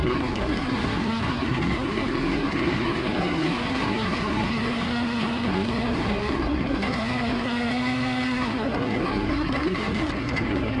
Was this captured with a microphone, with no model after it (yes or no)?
no